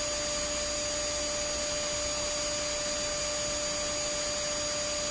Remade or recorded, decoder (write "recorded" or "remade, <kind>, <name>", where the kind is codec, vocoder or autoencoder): recorded